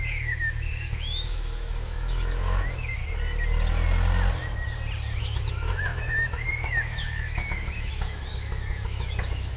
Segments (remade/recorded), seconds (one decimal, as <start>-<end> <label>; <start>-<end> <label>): 0.0-3.0 remade; 3.0-5.2 recorded; 5.2-9.6 remade